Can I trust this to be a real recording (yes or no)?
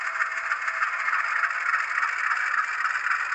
yes